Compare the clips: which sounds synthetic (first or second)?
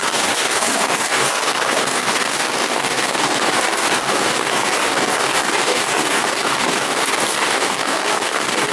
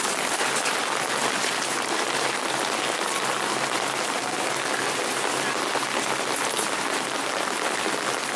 first